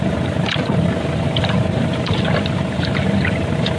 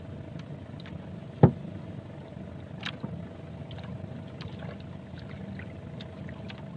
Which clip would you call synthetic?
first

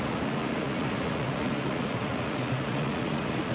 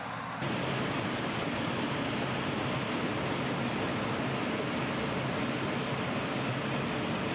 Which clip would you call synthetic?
first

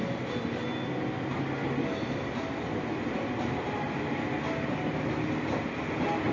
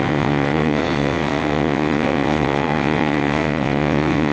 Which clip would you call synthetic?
second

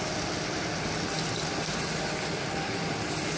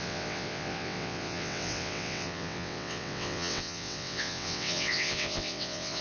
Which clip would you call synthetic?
second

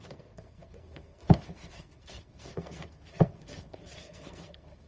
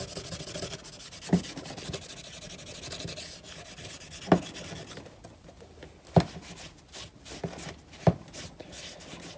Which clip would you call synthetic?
first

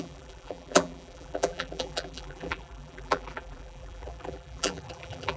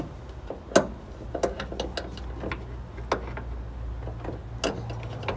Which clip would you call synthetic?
first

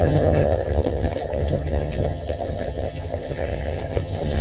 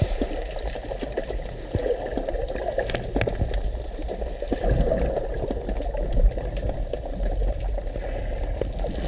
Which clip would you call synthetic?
first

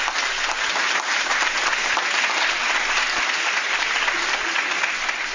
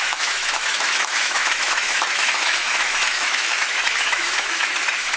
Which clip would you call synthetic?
second